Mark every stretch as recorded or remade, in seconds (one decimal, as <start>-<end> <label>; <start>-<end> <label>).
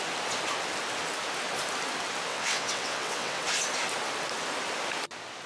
0.0-2.3 recorded; 2.3-3.4 remade; 3.4-5.5 recorded